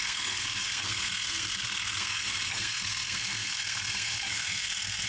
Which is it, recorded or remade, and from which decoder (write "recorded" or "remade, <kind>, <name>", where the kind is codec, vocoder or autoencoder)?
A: remade, codec, SNAC